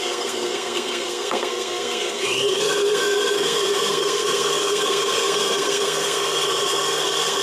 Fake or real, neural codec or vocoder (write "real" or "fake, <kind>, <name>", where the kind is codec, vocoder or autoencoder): fake, codec, SNAC